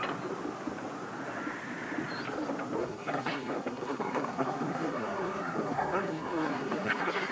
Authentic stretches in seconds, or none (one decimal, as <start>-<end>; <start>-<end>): 0.0-2.8